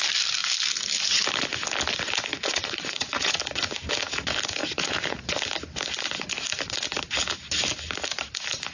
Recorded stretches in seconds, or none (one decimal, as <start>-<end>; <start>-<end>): 0.0-2.4; 3.4-4.6; 5.2-8.7

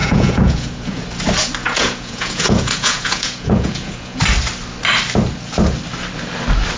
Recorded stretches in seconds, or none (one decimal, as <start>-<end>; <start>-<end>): 1.0-1.6; 4.2-6.8

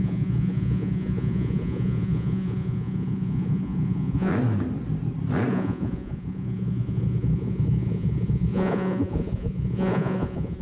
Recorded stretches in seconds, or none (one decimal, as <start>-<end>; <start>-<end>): 4.3-5.5

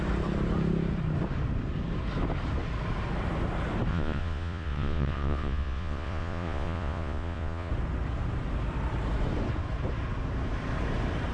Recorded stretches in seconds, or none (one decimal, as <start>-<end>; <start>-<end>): 0.0-3.9; 7.7-11.3

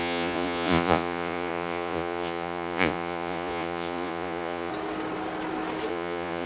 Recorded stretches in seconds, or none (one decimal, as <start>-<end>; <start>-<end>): 4.7-5.9

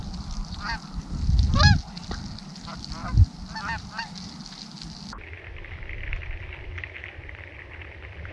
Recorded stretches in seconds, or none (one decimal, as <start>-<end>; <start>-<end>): 0.0-8.3